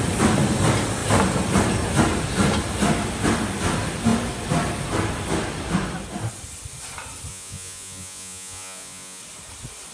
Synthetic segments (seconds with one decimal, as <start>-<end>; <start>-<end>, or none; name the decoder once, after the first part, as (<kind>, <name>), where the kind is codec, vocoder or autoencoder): 7.3-9.2 (vocoder, Vocos)